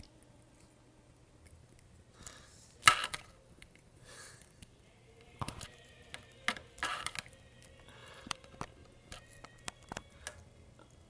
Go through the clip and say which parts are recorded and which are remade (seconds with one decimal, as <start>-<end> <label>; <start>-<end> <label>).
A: 0.0-3.0 recorded; 3.0-5.9 remade; 5.9-8.0 recorded; 8.0-8.5 remade; 8.5-11.1 recorded